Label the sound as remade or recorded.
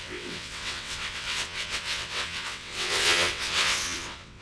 remade